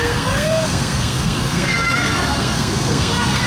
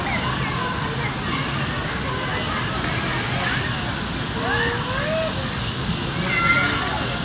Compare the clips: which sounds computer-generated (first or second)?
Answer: first